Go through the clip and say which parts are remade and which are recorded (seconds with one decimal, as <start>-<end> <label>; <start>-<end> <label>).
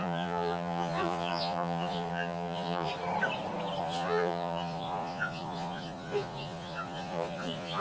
0.0-2.9 remade; 2.9-3.8 recorded; 3.8-7.8 remade